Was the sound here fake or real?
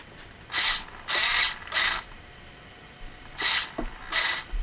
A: real